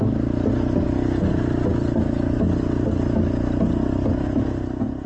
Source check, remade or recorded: recorded